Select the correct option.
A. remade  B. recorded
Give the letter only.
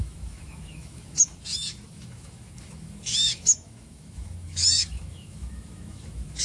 A